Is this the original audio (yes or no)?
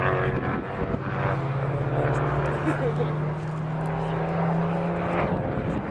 yes